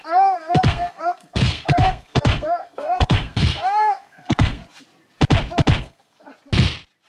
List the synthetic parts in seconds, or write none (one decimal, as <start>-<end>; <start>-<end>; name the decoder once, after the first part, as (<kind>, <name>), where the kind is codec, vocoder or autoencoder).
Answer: 0.0-4.6 (codec, SNAC); 5.8-6.3